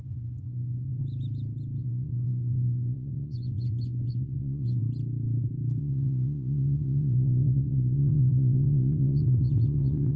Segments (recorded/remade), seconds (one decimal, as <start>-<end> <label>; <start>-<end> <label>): 0.0-1.0 remade; 1.0-1.8 recorded; 1.8-4.8 remade; 4.8-5.8 recorded; 5.8-10.2 remade